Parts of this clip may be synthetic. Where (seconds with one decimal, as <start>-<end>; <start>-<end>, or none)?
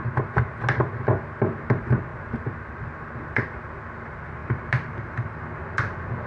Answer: 4.4-5.4